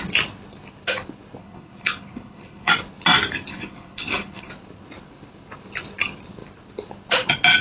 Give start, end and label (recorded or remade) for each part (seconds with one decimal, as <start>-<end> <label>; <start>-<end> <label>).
0.0-1.4 recorded; 1.4-2.7 remade; 2.7-3.5 recorded; 3.5-4.5 remade; 4.5-7.6 recorded

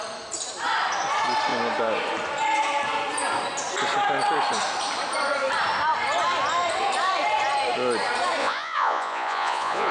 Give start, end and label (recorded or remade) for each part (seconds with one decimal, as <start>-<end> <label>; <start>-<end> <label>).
0.0-8.4 recorded; 8.4-9.9 remade